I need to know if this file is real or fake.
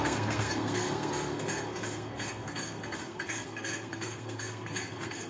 fake